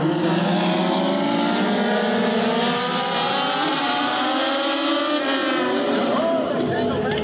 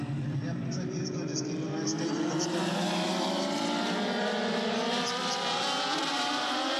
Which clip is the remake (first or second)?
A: second